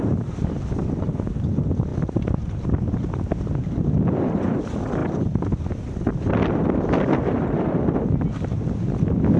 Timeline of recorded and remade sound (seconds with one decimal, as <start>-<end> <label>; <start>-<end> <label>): 0.0-1.9 recorded; 1.9-4.6 remade; 4.6-5.0 recorded; 5.0-7.9 remade; 7.9-9.4 recorded